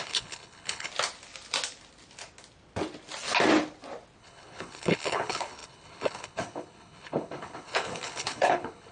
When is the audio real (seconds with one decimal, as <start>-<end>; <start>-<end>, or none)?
0.9-4.2